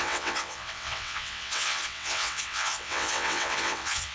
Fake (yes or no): yes